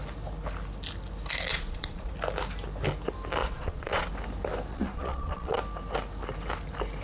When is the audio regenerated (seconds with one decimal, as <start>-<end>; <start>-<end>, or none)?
1.5-2.1; 3.4-4.1; 4.7-5.6